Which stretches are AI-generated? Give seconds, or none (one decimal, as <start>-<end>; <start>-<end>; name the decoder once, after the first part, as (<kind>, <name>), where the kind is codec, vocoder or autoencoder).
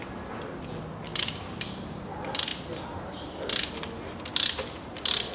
none